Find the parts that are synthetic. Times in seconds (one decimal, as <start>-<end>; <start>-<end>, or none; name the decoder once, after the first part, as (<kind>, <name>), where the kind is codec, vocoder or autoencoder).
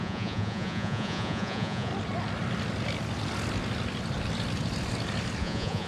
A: 0.0-1.9 (vocoder, Vocos); 5.4-5.9